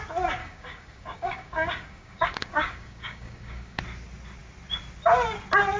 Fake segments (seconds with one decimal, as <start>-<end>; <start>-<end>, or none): 0.4-3.8